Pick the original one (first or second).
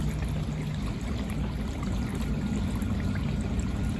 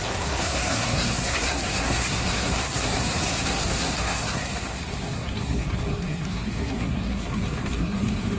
first